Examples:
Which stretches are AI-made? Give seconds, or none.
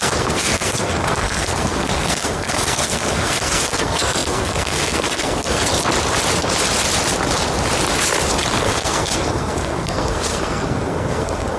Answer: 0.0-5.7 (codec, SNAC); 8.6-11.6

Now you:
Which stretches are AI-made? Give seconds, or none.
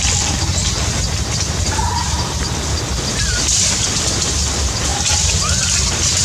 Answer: none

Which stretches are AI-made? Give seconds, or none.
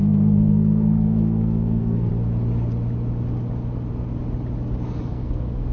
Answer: 0.0-2.1 (codec, SNAC); 5.1-5.7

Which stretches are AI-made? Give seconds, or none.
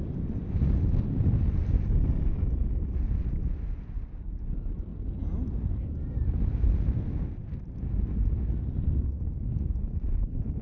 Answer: none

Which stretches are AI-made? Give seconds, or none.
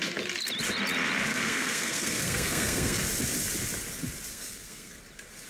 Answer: 1.3-3.0 (codec, SNAC); 4.3-5.0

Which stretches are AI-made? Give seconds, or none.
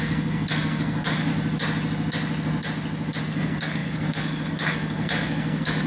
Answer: 0.0-1.3 (codec, SNAC); 3.2-5.9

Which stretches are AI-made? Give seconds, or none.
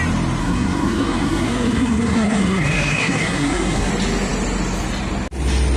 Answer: 0.4-3.9 (codec, SNAC)